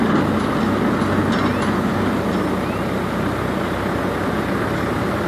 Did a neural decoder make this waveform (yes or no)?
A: no